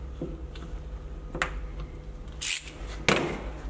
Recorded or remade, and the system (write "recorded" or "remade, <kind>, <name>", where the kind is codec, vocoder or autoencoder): recorded